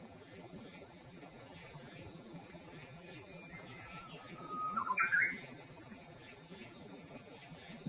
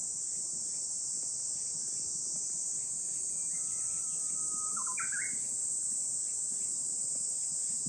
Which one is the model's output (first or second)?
first